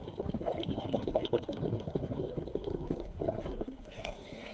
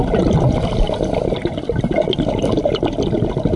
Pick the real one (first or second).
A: second